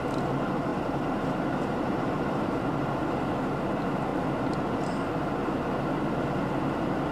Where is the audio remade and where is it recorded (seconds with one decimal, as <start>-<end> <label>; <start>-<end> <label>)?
0.0-0.7 recorded; 0.7-2.7 remade; 2.7-7.1 recorded